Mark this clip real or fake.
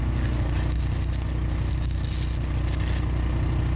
real